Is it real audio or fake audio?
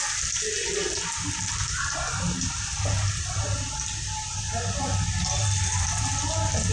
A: real